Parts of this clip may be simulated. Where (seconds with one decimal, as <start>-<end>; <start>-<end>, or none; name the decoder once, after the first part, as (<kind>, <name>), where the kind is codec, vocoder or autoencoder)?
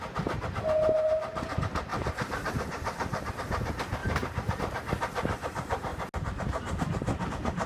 1.9-3.3 (vocoder, BigVGAN v2); 4.0-4.6